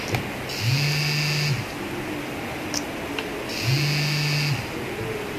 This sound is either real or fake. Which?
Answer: real